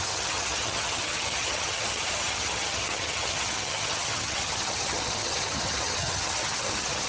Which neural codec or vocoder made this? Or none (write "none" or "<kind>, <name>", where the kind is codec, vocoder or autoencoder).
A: vocoder, HiFi-GAN